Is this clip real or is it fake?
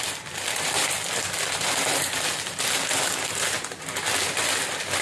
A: real